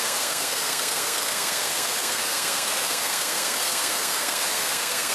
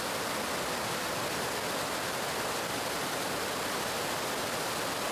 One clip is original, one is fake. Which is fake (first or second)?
first